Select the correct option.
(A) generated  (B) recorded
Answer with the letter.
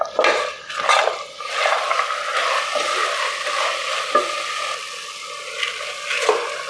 B